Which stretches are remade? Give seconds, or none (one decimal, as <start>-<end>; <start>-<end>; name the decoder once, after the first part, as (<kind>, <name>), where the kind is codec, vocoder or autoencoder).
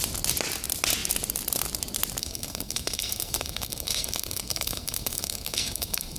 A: 2.2-6.2 (codec, SNAC)